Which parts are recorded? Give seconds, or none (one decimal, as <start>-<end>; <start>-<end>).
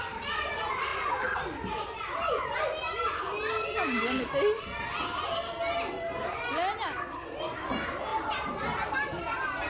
0.0-8.1; 9.2-9.7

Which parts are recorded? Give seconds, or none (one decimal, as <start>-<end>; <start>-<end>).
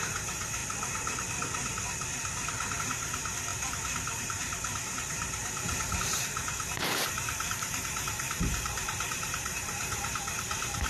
0.6-2.8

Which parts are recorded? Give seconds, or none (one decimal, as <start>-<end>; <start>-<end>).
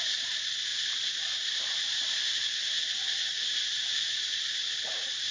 0.0-0.7; 2.6-3.3; 4.6-5.3